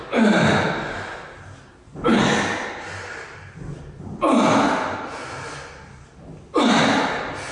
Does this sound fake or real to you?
real